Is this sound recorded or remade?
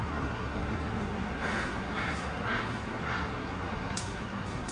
remade